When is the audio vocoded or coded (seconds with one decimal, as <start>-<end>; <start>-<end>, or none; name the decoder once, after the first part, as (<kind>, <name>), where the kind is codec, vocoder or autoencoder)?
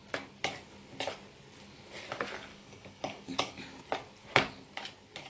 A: 2.5-3.6 (codec, DAC)